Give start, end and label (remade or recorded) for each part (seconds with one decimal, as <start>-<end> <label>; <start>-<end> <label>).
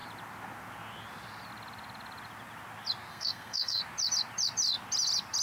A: 0.0-3.1 recorded; 3.1-3.8 remade; 3.8-5.4 recorded